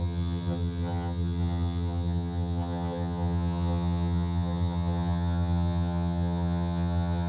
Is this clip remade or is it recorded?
remade